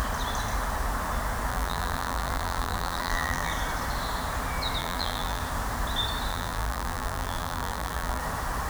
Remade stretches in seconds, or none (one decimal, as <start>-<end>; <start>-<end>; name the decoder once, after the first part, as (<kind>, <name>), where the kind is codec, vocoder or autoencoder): 1.5-3.5 (vocoder, BigVGAN v2); 4.8-5.4; 6.3-8.2